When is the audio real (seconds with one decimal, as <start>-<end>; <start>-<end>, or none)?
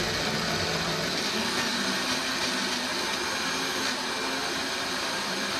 0.0-1.7; 2.2-4.4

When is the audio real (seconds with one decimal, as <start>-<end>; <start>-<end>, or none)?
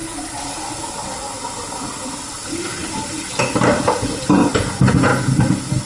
3.4-5.9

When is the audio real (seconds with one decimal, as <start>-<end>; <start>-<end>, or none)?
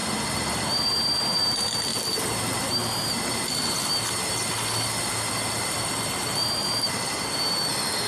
0.0-8.1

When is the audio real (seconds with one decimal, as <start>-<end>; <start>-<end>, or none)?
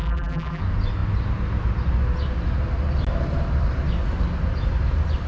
0.6-5.3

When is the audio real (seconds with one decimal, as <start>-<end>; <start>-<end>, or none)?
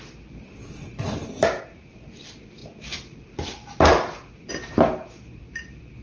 0.0-6.0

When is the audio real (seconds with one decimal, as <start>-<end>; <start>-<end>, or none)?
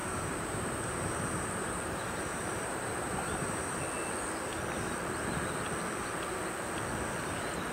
3.8-7.7